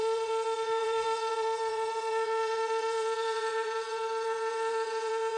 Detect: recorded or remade remade